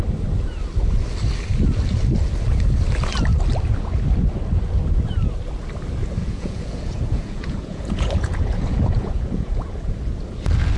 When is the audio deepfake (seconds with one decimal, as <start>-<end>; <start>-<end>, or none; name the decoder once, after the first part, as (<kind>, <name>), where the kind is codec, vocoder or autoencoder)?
6.2-10.0 (vocoder, Vocos)